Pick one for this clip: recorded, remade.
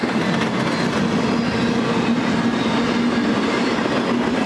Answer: recorded